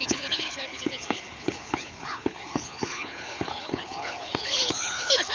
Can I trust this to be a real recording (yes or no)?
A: no